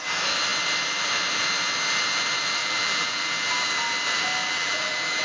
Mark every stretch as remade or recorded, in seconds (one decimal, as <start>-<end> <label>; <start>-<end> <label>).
0.0-2.6 recorded; 2.6-3.2 remade; 3.2-4.4 recorded; 4.4-5.2 remade